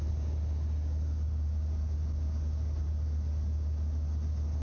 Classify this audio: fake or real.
real